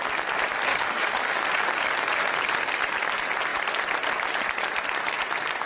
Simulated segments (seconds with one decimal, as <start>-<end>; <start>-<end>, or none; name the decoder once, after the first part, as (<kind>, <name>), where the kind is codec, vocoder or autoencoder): 0.7-1.4 (codec, DAC)